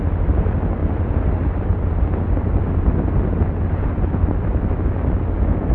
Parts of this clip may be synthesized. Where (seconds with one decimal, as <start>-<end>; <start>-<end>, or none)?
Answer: none